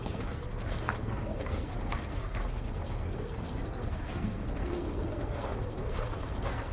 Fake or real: fake